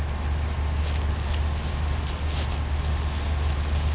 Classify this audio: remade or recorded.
recorded